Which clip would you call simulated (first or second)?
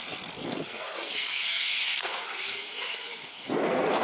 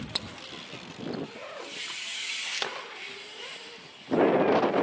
first